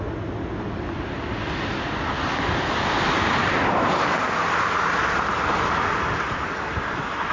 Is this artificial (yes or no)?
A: no